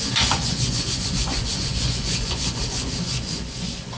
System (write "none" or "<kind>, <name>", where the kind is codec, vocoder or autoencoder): vocoder, Vocos